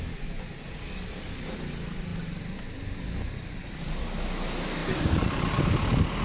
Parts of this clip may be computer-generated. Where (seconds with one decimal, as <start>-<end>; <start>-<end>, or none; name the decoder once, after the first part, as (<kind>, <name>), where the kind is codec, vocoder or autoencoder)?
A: none